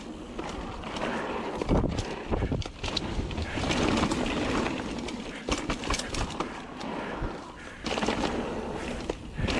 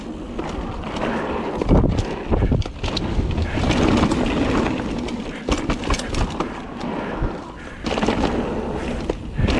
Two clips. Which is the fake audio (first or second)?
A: first